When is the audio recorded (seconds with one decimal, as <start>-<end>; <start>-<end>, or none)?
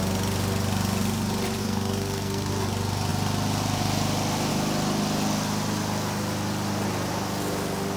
0.0-1.6; 2.5-8.0